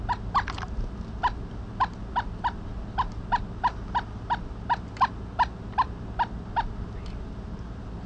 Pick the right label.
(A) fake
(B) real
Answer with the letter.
B